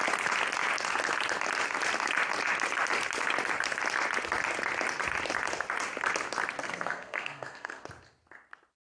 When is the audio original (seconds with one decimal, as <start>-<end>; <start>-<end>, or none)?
0.0-6.6; 7.9-8.8